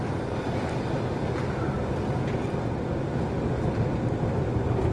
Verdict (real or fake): real